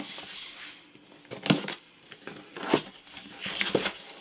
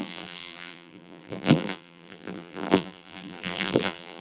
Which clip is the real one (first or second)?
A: first